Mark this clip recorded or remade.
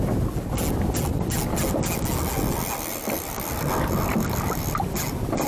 recorded